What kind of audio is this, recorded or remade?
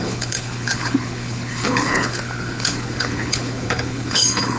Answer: remade